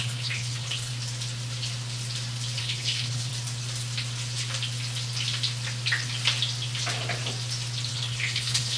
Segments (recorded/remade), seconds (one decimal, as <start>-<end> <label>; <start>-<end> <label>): 0.0-0.9 remade; 0.9-2.6 recorded; 2.6-3.3 remade; 3.3-7.9 recorded; 7.9-8.8 remade